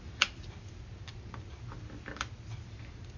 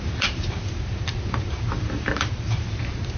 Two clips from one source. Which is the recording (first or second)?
first